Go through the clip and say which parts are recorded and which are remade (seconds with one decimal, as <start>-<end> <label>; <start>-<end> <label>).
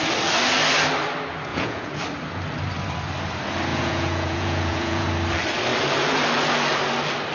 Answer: 0.0-1.5 recorded; 1.5-2.0 remade; 2.0-3.7 recorded; 3.7-5.1 remade; 5.1-7.3 recorded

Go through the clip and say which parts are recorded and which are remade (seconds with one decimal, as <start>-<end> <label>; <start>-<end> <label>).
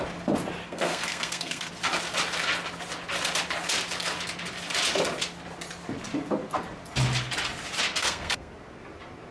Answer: 0.0-0.6 recorded; 0.6-1.7 remade; 1.7-8.0 recorded; 8.0-8.5 remade; 8.5-9.3 recorded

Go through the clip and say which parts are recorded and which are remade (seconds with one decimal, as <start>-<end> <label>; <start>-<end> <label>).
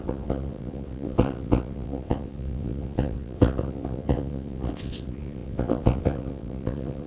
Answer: 0.0-7.1 remade